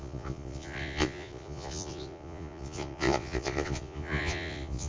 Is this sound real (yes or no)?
no